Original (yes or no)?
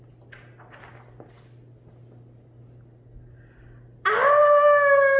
yes